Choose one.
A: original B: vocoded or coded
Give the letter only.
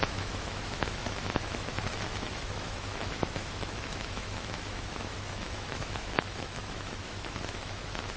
B